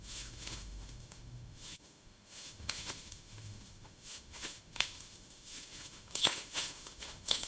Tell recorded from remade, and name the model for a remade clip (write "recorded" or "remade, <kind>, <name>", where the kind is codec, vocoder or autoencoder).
remade, autoencoder, DAC-VAE